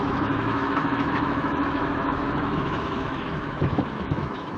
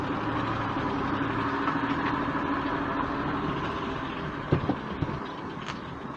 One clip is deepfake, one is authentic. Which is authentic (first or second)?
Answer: second